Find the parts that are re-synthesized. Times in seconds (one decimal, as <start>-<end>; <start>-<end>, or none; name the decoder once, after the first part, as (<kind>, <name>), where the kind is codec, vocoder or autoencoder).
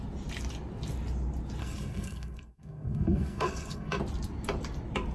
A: 1.6-4.0 (codec, SNAC)